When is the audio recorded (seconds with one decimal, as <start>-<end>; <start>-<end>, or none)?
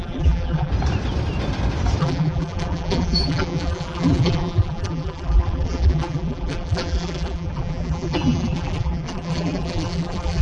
0.7-2.0